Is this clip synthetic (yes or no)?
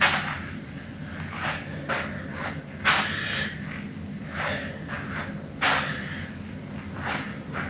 no